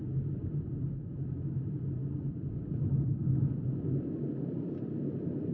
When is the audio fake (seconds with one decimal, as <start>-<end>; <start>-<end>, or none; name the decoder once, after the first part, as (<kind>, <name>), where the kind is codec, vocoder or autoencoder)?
0.0-5.5 (vocoder, BigVGAN v2)